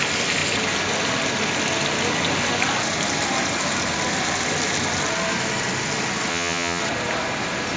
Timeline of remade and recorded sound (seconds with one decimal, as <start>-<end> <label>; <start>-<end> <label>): 0.0-6.3 recorded; 6.3-6.8 remade; 6.8-7.8 recorded

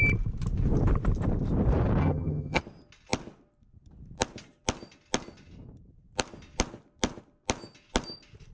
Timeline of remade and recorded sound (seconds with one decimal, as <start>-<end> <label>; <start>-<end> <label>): 0.0-2.0 recorded; 2.0-2.6 remade; 2.6-8.5 recorded

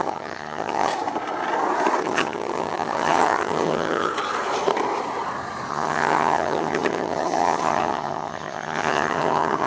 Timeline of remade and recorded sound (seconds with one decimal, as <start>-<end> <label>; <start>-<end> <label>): 0.0-0.9 remade; 0.9-2.0 recorded; 2.0-4.1 remade; 4.1-5.7 recorded; 5.7-9.7 remade

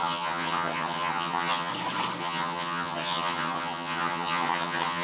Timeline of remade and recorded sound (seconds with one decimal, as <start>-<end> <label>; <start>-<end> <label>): 0.0-1.7 remade; 1.7-2.2 recorded; 2.2-5.0 remade

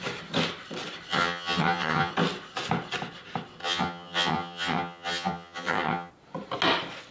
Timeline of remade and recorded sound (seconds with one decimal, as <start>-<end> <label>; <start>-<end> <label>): 0.0-1.1 recorded; 1.1-2.1 remade; 2.1-3.6 recorded; 3.6-6.1 remade; 6.1-7.1 recorded

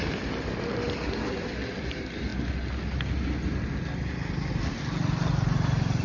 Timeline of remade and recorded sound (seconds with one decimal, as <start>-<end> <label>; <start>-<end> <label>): 0.0-6.0 recorded